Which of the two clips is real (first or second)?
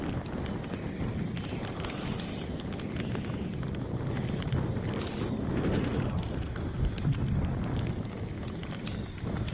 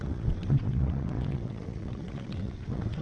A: first